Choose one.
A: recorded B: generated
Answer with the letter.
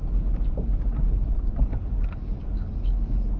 A